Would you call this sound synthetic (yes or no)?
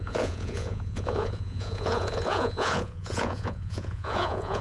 yes